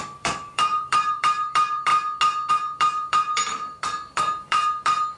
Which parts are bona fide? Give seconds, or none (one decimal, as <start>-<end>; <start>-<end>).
1.9-2.5